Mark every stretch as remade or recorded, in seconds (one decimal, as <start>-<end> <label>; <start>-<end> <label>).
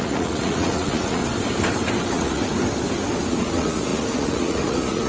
0.0-1.2 remade; 1.2-2.1 recorded; 2.1-2.5 remade; 2.5-3.3 recorded; 3.3-5.1 remade